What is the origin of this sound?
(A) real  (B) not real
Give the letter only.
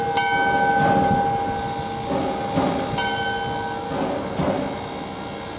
A